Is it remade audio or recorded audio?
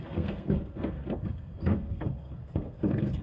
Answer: remade